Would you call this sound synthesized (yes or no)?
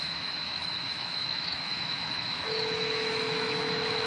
yes